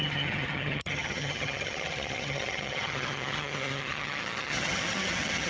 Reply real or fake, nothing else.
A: fake